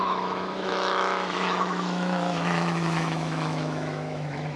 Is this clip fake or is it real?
fake